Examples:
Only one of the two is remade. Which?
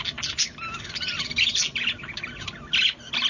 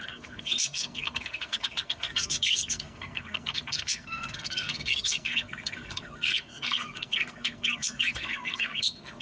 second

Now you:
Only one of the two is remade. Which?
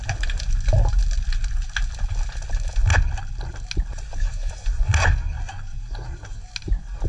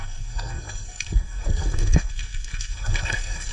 second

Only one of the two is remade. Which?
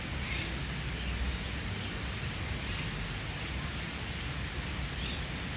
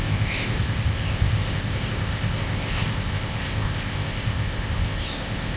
second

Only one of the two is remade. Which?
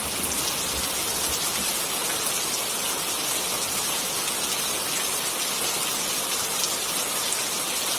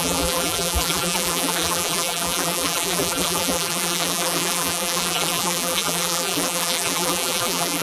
second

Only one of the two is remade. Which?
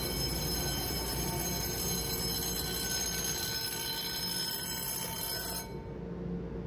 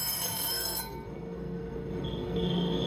second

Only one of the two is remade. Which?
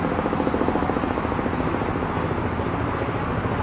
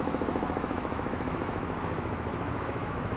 second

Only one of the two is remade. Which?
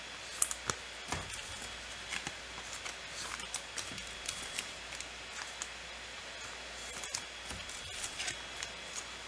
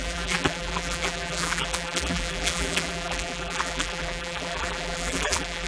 second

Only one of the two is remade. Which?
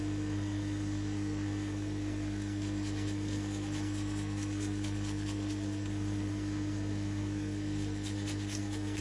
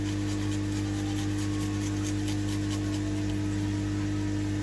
first